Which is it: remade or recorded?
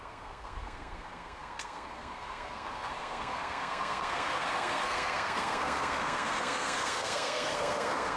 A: remade